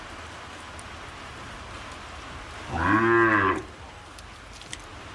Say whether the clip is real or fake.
real